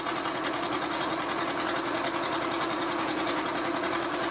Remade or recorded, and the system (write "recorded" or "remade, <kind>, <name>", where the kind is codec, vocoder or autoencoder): remade, vocoder, Vocos